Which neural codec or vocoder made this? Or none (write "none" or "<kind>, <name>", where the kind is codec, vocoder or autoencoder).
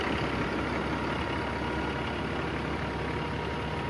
none